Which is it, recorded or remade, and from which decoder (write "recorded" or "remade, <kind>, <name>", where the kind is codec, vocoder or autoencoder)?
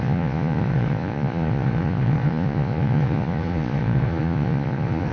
remade, vocoder, Vocos